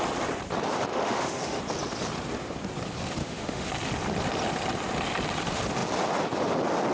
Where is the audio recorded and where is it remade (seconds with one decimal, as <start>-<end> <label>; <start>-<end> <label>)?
0.0-0.9 recorded; 0.9-1.6 remade; 1.6-3.2 recorded; 3.2-3.7 remade; 3.7-6.9 recorded